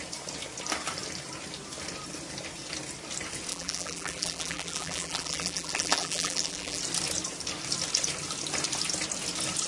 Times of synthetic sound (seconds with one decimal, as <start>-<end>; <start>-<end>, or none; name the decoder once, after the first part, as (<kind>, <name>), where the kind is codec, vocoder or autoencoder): 3.5-6.8 (vocoder, BigVGAN v2)